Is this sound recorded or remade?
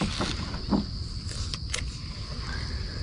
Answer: recorded